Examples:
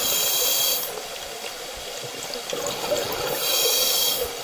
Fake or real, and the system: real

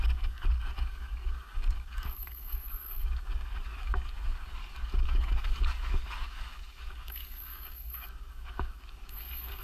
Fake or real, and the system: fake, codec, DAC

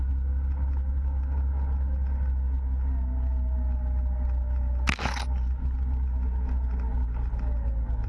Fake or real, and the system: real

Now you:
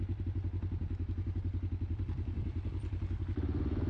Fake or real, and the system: real